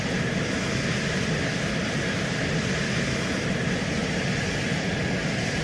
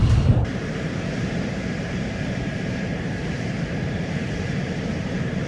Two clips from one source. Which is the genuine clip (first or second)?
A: first